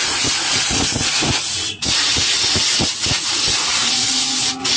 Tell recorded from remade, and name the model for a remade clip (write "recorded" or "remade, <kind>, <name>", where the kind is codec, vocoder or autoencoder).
remade, vocoder, Vocos